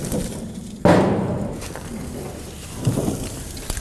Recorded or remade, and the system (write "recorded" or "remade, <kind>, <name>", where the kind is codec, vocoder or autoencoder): remade, vocoder, BigVGAN v2